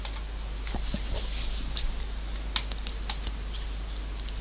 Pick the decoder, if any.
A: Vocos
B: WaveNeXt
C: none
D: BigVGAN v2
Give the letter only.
C